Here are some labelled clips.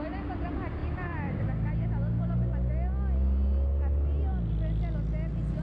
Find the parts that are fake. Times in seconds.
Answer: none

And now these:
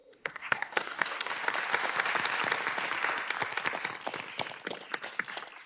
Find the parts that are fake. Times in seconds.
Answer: 0.0-1.3 (codec, SNAC)